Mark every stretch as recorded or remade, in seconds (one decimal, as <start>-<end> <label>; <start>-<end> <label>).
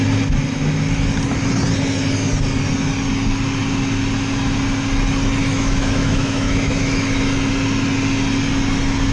0.0-5.4 recorded; 5.4-7.2 remade; 7.2-9.1 recorded